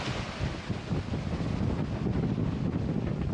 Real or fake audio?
real